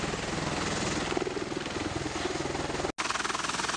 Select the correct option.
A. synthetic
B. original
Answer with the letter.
B